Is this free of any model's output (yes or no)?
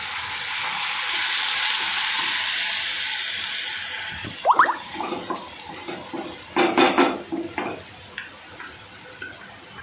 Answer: yes